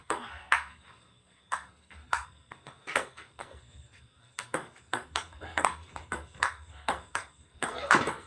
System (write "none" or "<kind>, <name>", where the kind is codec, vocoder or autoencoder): codec, SNAC